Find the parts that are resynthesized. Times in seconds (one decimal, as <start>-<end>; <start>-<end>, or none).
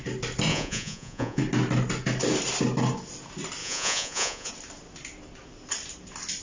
0.5-1.4; 3.6-4.5